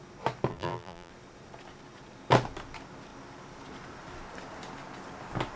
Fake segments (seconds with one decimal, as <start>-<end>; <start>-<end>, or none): 0.5-1.1